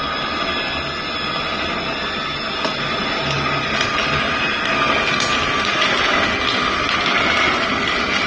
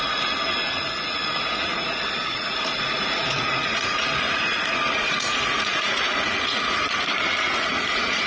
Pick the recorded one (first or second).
first